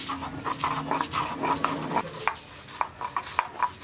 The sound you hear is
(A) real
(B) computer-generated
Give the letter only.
A